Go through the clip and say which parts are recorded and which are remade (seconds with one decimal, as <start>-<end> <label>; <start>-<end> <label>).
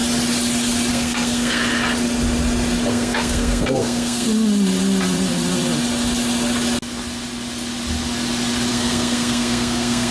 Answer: 0.0-0.9 recorded; 0.9-1.6 remade; 1.6-2.9 recorded; 2.9-4.3 remade; 4.3-8.7 recorded; 8.7-10.1 remade